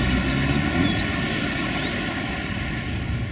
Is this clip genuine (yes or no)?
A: yes